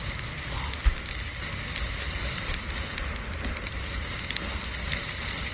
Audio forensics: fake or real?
real